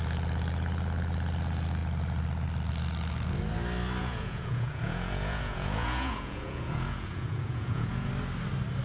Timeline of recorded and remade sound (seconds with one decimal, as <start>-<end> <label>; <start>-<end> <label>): 0.0-4.0 recorded; 4.0-8.1 remade; 8.1-8.8 recorded